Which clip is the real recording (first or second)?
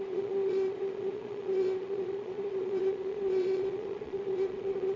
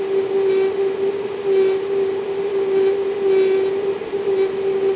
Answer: second